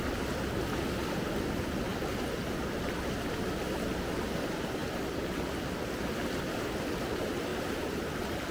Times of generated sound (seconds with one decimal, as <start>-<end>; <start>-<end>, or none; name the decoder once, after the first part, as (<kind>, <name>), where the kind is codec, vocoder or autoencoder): 1.9-2.9 (vocoder, BigVGAN v2); 7.5-8.5